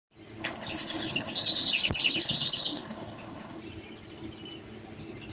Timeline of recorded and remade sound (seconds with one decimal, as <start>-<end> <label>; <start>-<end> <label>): 0.0-0.4 recorded; 0.4-3.6 remade; 3.6-5.3 recorded